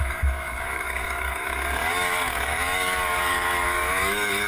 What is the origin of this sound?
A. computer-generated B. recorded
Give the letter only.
A